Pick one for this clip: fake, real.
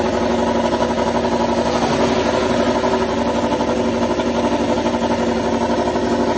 real